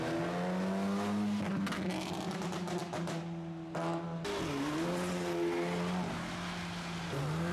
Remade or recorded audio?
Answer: recorded